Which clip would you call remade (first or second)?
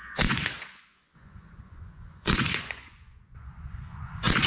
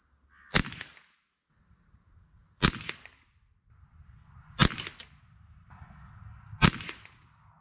first